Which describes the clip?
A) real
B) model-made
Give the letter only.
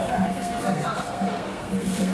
B